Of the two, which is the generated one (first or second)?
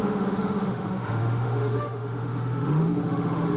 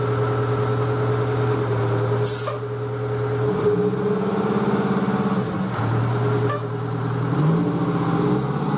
first